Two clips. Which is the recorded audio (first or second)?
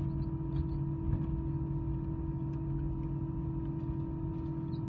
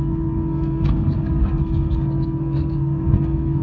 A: first